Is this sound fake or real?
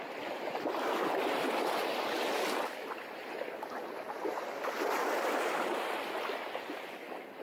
real